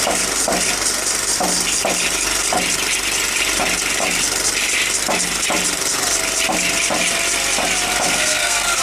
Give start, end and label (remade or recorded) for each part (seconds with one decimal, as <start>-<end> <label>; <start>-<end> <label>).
0.0-8.1 recorded; 8.1-8.8 remade